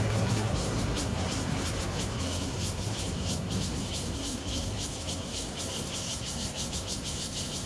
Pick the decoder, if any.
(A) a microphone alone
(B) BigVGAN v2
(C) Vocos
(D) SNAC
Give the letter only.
D